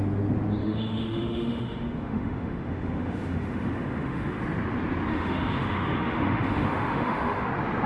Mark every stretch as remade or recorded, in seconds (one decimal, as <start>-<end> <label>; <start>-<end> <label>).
0.0-0.6 recorded; 0.6-4.4 remade; 4.4-5.1 recorded; 5.1-7.5 remade; 7.5-7.9 recorded